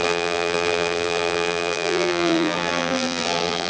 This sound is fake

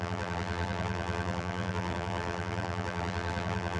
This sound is fake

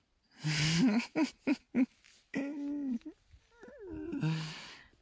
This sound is real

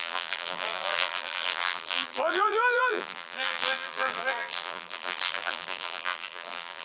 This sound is fake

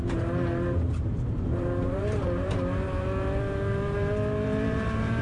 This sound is fake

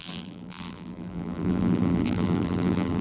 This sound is fake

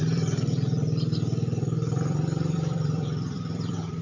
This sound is fake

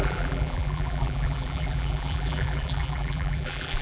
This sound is fake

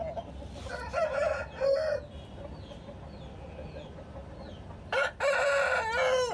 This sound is real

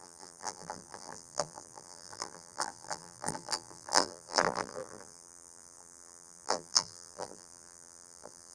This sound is fake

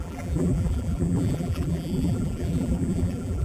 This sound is fake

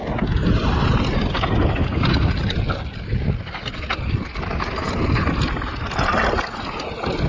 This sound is real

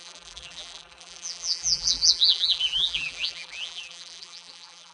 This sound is fake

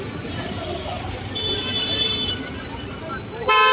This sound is fake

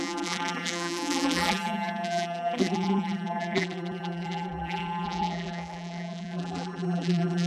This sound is fake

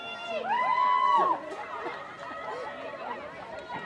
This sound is real